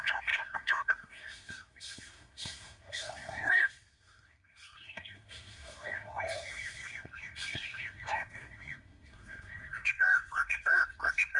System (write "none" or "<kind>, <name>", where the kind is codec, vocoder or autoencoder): codec, SNAC